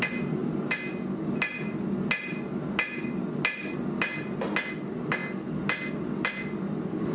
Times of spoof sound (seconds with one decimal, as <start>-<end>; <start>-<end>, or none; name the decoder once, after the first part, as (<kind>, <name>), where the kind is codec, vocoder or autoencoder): none